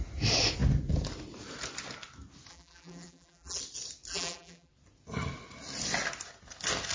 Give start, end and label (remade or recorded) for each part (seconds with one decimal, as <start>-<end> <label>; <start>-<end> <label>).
0.0-2.5 recorded; 2.5-3.6 remade; 3.6-4.1 recorded; 4.1-4.7 remade; 4.7-6.9 recorded